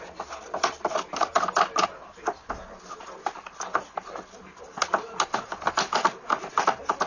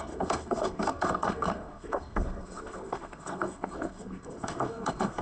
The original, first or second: first